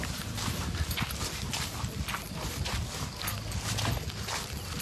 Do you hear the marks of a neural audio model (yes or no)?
yes